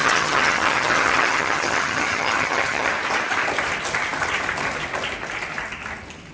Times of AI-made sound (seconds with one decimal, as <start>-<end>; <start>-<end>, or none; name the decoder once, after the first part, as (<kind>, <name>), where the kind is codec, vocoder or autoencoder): 0.0-2.9 (vocoder, HiFi-GAN)